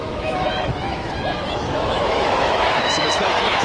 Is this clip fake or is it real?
fake